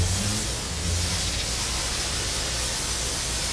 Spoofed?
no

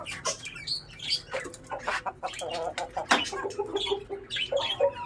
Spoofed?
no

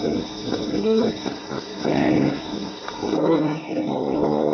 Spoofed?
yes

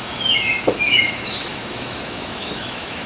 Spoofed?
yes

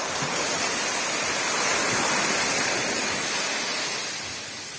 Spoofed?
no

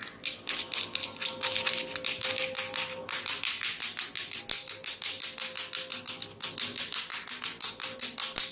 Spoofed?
no